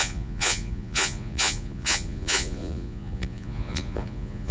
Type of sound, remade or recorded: remade